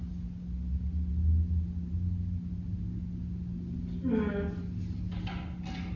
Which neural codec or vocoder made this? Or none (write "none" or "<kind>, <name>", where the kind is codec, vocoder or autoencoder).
none